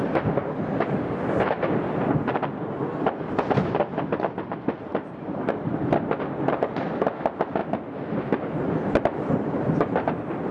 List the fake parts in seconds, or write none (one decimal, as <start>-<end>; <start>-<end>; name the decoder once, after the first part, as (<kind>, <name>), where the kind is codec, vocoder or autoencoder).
4.9-5.8 (vocoder, BigVGAN v2)